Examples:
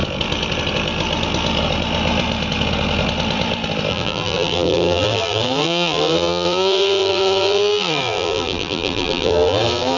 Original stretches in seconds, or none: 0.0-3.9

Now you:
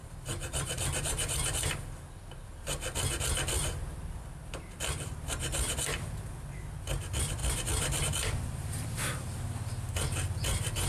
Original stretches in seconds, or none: 1.8-10.9

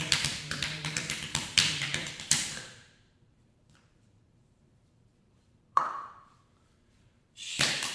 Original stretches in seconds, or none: none

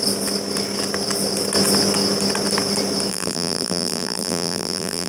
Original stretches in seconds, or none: 0.0-3.1

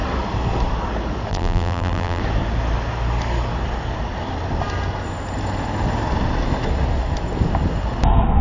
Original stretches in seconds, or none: 0.0-1.3; 2.2-8.4

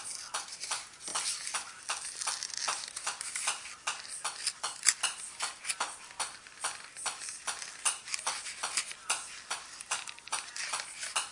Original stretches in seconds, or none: 0.0-11.3

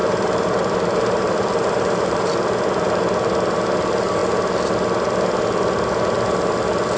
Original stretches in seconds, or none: 3.0-7.0